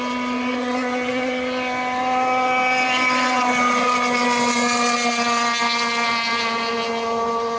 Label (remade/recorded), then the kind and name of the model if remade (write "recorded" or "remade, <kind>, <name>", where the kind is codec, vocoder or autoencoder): recorded